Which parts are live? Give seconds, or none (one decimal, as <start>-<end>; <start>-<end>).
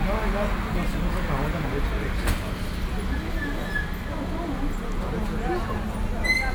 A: 0.0-6.5